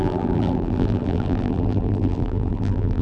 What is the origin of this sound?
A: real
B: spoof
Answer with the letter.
B